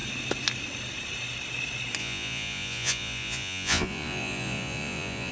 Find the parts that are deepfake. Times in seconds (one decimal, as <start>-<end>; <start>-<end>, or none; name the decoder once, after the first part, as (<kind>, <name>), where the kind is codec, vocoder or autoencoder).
2.0-5.3 (vocoder, Vocos)